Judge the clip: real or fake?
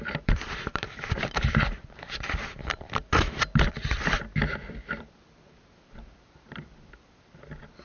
fake